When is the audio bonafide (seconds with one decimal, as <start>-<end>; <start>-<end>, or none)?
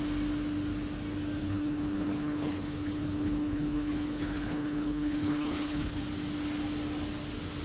0.0-1.4; 6.0-7.6